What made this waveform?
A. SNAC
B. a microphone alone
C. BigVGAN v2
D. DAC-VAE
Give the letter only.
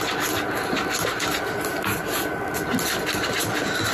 B